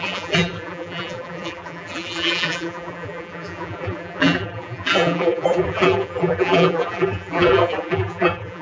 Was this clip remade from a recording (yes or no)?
yes